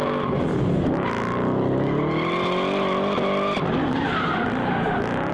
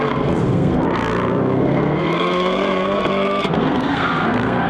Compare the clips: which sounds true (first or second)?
first